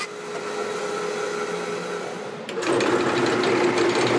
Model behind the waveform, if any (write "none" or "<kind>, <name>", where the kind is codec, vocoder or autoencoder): none